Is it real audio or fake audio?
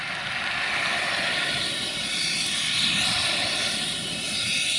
real